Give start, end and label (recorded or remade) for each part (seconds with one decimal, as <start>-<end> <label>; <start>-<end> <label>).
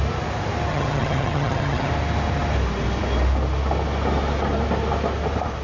0.0-0.7 recorded; 0.7-1.9 remade; 1.9-5.6 recorded